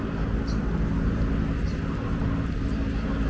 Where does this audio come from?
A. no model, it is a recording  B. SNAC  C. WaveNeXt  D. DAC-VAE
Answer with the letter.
A